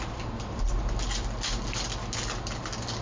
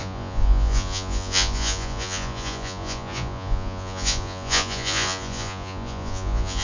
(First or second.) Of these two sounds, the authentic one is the first